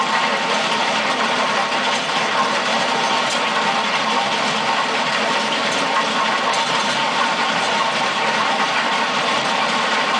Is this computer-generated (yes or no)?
yes